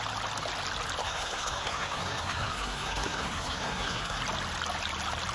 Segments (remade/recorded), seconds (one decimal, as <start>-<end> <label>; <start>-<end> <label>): 0.0-1.0 recorded; 1.0-4.2 remade; 4.2-5.3 recorded